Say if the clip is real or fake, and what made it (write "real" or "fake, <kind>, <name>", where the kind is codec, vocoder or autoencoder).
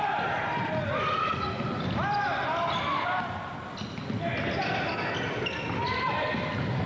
real